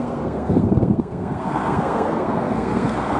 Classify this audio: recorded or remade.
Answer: remade